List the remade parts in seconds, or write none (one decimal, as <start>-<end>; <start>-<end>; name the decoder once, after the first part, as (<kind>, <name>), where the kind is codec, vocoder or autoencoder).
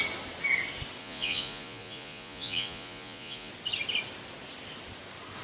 1.0-3.5 (vocoder, Vocos)